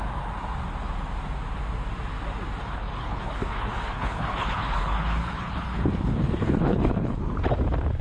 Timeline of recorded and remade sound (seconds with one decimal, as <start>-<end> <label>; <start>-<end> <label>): 0.0-2.6 recorded; 2.6-7.2 remade; 7.2-8.0 recorded